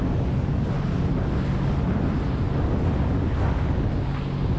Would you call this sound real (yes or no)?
yes